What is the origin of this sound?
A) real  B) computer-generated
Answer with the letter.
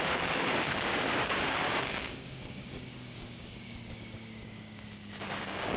B